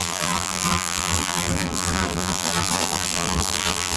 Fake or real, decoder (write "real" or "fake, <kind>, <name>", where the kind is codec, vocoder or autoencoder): fake, vocoder, BigVGAN v2